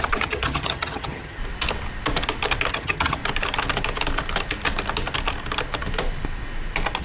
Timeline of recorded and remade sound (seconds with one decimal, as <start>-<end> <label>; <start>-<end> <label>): 0.0-1.4 remade; 1.4-2.7 recorded; 2.7-3.2 remade; 3.2-7.0 recorded